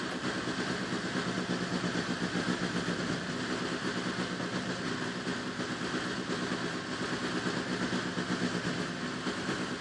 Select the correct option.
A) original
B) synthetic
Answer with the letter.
A